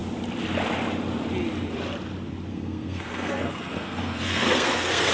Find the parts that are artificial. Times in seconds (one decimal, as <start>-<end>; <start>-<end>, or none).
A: 2.5-5.1